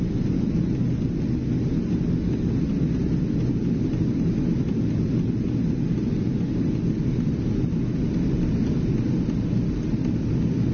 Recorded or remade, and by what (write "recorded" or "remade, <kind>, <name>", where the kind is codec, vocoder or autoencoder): recorded